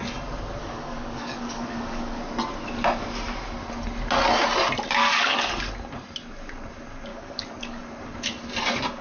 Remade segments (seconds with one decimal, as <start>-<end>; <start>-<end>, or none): 0.6-2.2; 5.0-5.5; 7.1-7.8